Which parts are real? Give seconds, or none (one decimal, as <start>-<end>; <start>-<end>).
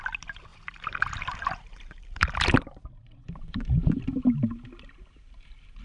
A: 0.0-0.5; 4.0-5.8